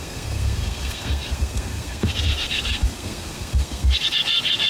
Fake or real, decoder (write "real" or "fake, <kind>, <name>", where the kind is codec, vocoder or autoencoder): fake, codec, SNAC